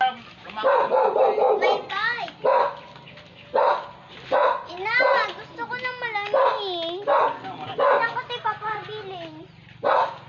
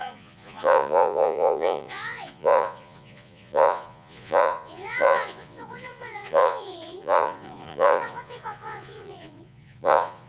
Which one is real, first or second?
first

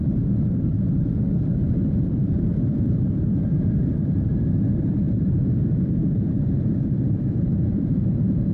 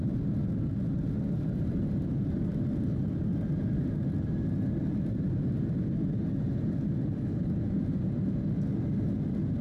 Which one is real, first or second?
second